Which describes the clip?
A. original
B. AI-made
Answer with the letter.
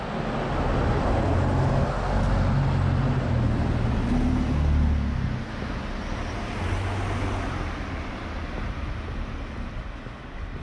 A